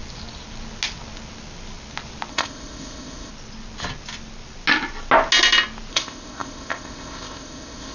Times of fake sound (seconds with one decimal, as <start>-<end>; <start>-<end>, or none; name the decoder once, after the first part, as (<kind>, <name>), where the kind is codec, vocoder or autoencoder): 2.3-3.3 (codec, ZipCodec); 5.9-7.9